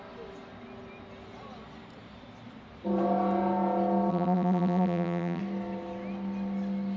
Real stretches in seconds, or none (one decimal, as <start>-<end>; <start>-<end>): 0.0-4.1; 5.4-7.0